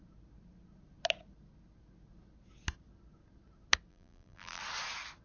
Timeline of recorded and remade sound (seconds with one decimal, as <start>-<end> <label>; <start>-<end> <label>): 0.0-3.9 recorded; 3.9-4.6 remade; 4.6-5.2 recorded